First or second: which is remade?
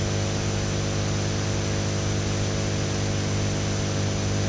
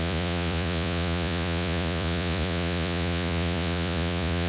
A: second